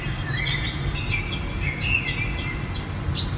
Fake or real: real